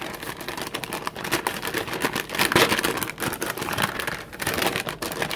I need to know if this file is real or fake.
real